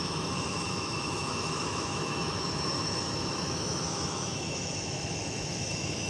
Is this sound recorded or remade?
remade